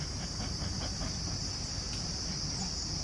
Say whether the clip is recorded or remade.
recorded